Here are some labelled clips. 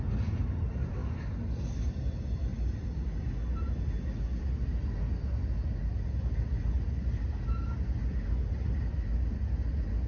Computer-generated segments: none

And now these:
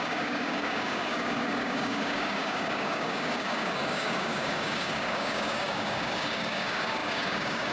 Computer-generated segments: 0.0-7.7 (codec, DAC)

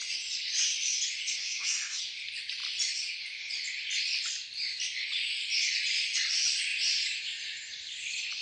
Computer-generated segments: 1.4-2.0 (codec, DAC)

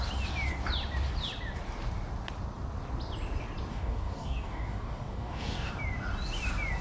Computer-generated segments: 3.7-5.7 (codec, DAC)

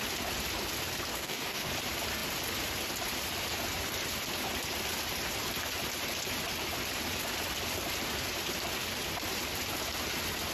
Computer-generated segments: 1.1-1.7 (codec, DAC)